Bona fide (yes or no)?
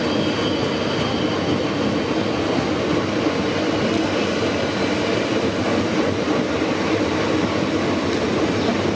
yes